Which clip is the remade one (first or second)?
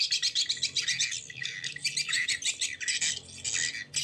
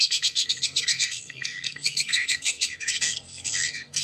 second